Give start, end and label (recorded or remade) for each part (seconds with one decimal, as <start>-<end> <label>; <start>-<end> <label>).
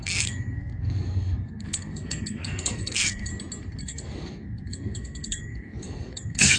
0.0-3.3 remade; 3.3-3.8 recorded; 3.8-6.6 remade